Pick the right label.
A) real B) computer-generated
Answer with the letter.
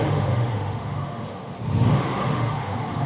B